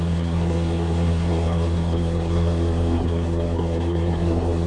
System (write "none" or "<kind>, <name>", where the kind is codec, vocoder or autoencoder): codec, SNAC